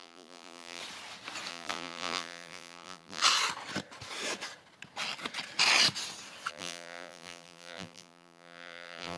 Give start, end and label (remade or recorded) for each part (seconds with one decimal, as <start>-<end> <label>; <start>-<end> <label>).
0.0-0.8 remade; 0.8-1.5 recorded; 1.5-3.2 remade; 3.2-6.5 recorded; 6.5-9.2 remade